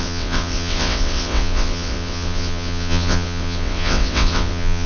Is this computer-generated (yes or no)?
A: yes